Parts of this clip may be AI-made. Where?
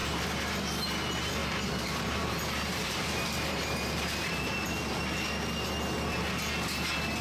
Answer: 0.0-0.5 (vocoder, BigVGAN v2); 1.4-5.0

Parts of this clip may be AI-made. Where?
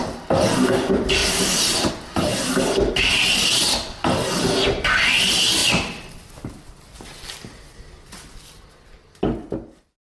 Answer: 1.2-1.9 (vocoder, BigVGAN v2)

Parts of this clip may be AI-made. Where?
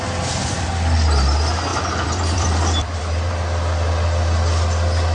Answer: 1.7-3.3 (vocoder, BigVGAN v2)